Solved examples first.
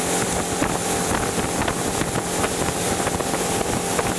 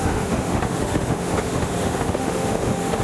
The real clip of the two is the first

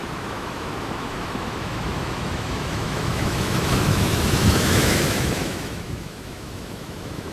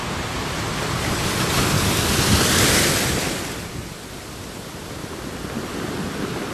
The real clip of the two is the second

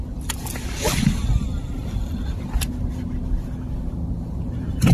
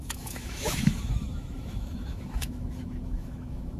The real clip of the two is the first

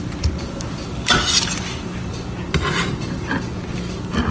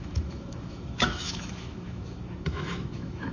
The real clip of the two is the first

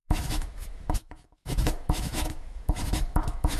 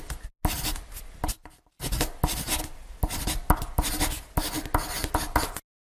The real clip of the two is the second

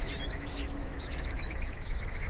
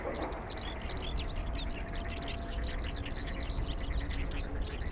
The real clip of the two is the second